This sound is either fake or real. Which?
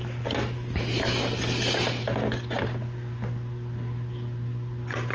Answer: real